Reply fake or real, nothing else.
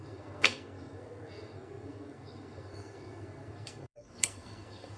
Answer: fake